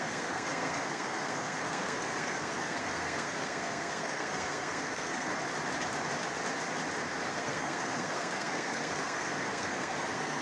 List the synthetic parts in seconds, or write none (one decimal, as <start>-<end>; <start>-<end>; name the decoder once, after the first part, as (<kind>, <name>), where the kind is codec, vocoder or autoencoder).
0.0-5.3 (codec, SNAC); 7.3-10.4